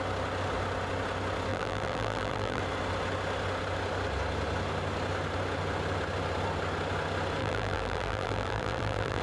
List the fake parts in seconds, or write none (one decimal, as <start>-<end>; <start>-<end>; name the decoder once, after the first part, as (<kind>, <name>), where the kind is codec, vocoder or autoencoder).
1.5-2.6 (vocoder, BigVGAN v2); 7.4-9.2